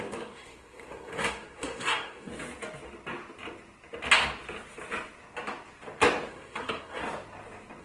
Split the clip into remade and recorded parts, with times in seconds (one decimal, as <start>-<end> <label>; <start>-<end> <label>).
0.0-2.3 remade; 2.3-6.3 recorded; 6.3-7.0 remade; 7.0-7.8 recorded